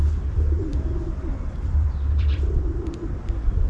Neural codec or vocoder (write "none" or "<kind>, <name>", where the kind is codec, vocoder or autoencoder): vocoder, BigVGAN v2